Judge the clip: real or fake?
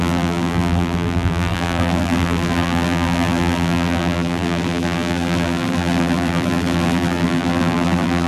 fake